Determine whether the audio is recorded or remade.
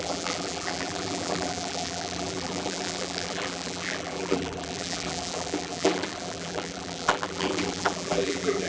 remade